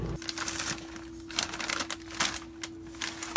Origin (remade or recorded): recorded